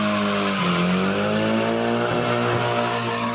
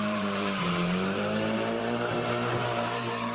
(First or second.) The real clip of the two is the first